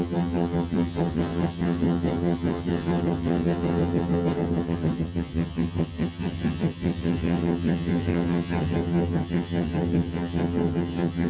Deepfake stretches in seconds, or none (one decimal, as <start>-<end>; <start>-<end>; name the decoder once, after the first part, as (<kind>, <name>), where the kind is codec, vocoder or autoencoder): 0.0-11.3 (vocoder, HiFi-GAN)